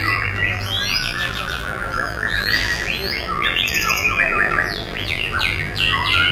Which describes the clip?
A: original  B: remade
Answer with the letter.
B